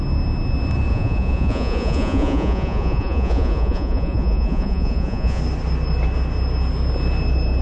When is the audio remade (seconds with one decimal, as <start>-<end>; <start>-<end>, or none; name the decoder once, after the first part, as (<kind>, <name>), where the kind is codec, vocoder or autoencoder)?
0.9-5.4 (vocoder, Vocos)